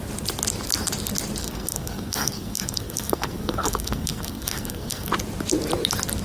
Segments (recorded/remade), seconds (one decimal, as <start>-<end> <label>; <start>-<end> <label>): 0.0-1.4 recorded; 1.4-5.1 remade; 5.1-6.2 recorded